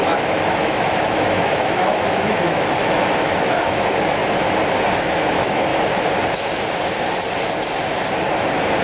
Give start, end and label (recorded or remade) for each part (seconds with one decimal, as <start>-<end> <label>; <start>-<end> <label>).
0.0-4.2 remade; 4.2-5.0 recorded; 5.0-5.7 remade; 5.7-8.8 recorded